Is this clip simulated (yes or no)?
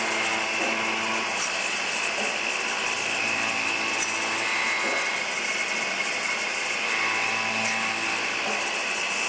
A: no